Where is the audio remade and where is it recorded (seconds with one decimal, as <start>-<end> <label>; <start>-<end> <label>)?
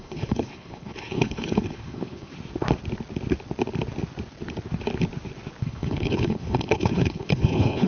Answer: 0.0-2.3 remade; 2.3-5.6 recorded; 5.6-7.9 remade